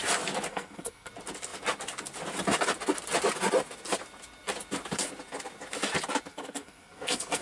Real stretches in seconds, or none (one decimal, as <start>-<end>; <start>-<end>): 0.0-0.5; 1.1-6.3